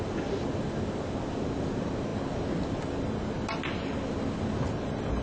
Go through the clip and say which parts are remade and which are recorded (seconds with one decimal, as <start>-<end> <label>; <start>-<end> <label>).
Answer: 0.0-5.2 recorded